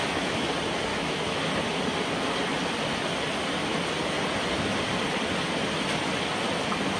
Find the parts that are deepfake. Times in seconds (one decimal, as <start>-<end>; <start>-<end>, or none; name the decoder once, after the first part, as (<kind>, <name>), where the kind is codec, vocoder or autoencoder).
0.0-0.5 (autoencoder, DAC-VAE); 0.9-1.4